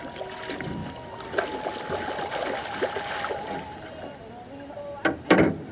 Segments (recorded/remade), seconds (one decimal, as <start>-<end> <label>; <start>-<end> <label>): 0.0-0.8 remade; 0.8-4.2 recorded; 4.2-5.7 remade